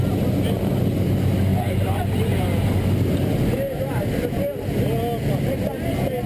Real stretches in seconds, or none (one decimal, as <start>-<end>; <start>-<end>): 0.0-6.3